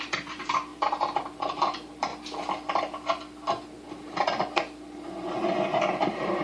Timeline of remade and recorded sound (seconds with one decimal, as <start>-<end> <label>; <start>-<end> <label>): 0.0-2.1 remade; 2.1-5.9 recorded; 5.9-6.4 remade